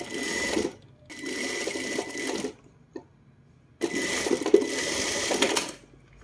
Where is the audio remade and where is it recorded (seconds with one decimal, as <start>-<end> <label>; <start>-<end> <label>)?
0.0-6.2 recorded